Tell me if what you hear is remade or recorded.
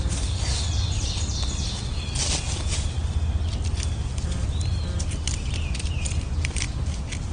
recorded